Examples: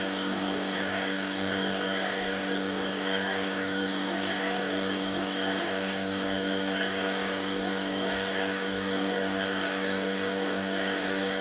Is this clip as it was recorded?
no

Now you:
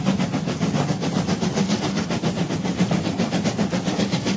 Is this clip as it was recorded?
yes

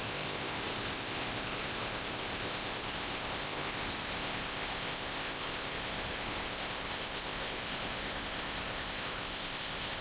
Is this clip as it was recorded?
no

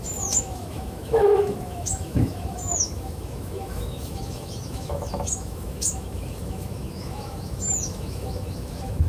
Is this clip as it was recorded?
no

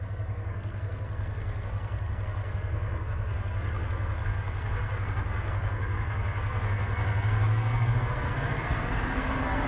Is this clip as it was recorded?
no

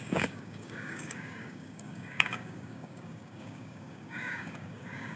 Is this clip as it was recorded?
no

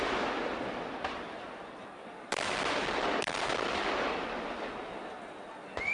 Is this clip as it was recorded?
yes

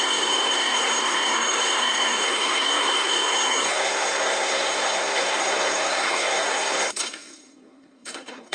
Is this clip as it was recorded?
no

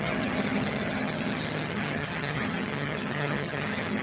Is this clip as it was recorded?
no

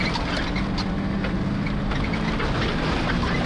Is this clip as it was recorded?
yes